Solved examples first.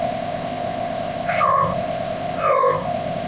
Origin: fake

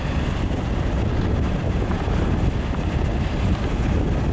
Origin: real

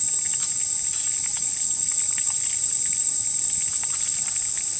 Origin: real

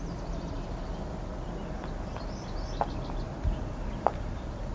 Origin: real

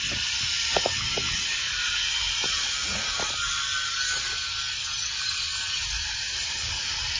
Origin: real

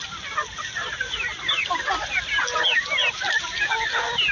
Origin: real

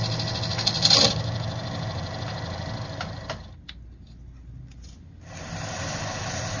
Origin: real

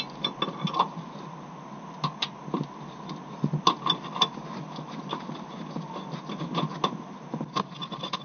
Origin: real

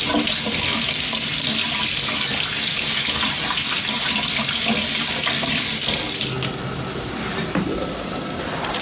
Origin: real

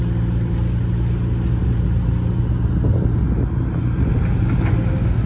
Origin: real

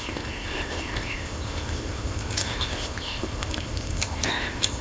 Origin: fake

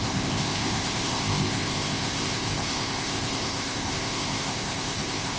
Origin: fake